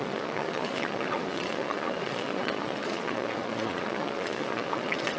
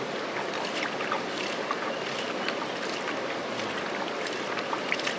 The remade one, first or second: first